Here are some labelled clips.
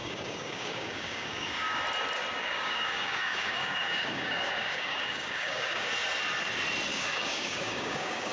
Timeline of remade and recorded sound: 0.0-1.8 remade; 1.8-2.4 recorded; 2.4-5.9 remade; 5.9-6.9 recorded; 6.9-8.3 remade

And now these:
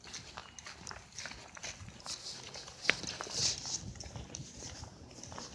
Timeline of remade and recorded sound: 0.0-5.5 recorded

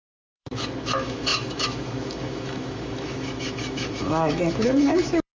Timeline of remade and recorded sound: 0.0-5.3 remade

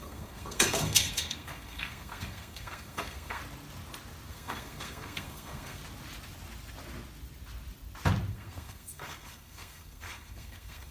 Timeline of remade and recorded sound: 0.0-3.4 remade; 3.4-4.3 recorded; 4.3-5.8 remade; 5.8-8.3 recorded; 8.3-10.9 remade

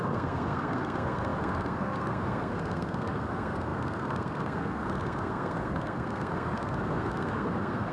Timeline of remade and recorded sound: 0.0-7.9 remade

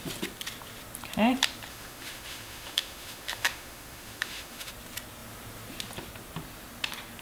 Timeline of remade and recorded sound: 0.0-1.7 recorded; 1.7-4.7 remade; 4.7-7.2 recorded